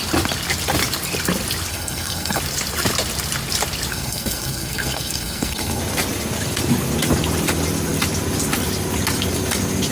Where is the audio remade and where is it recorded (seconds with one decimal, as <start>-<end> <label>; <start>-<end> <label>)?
0.0-1.7 recorded; 1.7-2.4 remade; 2.4-3.9 recorded; 3.9-5.8 remade; 5.8-9.9 recorded